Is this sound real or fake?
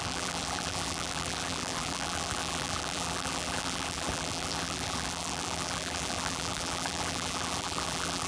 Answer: fake